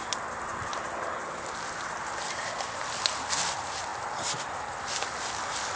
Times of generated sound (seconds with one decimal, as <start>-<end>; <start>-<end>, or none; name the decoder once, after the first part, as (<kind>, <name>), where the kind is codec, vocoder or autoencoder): 3.9-5.3 (vocoder, BigVGAN v2)